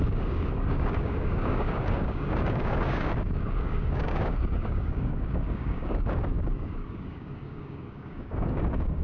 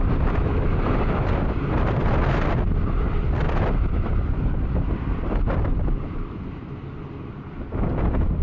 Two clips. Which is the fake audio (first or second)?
first